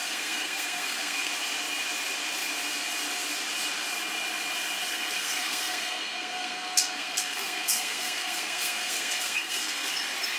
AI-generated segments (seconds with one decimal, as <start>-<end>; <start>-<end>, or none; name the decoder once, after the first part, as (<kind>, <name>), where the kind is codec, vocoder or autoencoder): 0.0-1.3 (codec, SNAC); 4.9-9.9